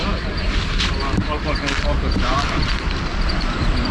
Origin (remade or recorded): remade